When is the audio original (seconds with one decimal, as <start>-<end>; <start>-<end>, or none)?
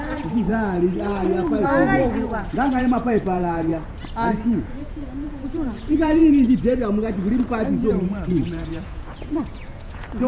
0.5-2.3; 3.7-4.3; 6.2-7.9